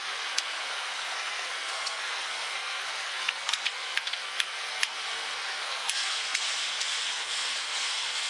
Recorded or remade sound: remade